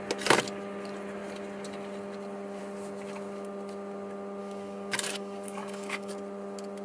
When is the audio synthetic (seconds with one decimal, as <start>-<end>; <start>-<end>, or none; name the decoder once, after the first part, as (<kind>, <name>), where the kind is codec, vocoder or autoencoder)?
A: 4.4-6.1 (codec, DAC)